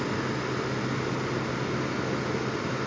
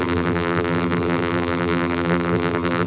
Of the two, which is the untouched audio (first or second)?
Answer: first